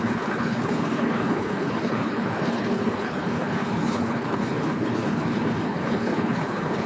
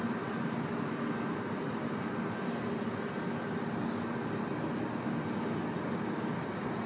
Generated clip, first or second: first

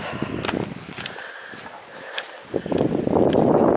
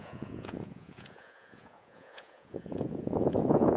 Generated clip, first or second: second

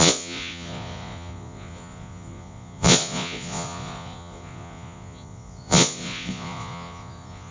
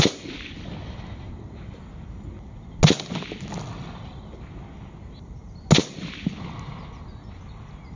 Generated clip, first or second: first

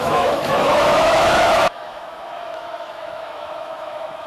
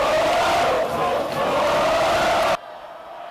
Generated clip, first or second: first